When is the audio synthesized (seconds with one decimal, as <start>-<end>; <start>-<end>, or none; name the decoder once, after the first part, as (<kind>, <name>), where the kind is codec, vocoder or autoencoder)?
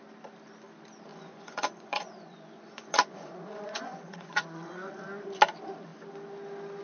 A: 1.1-4.7 (vocoder, Vocos)